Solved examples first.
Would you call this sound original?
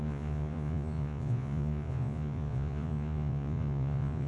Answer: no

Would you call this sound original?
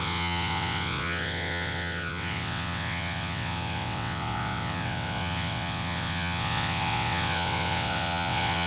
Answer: no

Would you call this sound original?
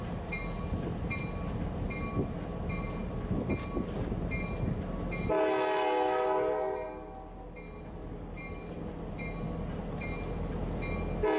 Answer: yes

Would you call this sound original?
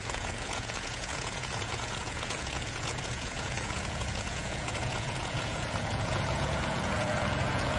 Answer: no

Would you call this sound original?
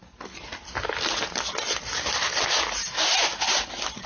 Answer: yes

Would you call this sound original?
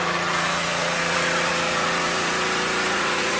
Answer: no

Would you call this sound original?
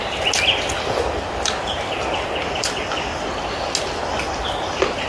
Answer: yes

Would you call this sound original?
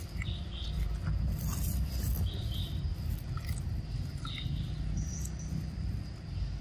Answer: yes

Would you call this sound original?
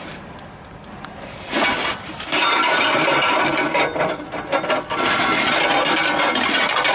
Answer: yes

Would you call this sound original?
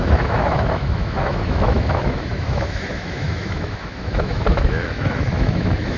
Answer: no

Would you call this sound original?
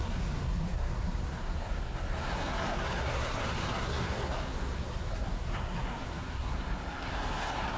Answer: no